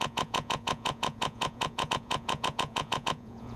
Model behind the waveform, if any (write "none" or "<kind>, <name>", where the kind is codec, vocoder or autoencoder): vocoder, Vocos